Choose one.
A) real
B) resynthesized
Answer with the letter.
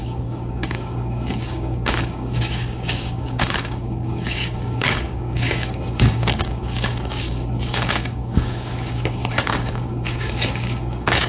B